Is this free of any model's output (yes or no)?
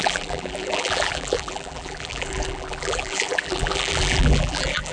no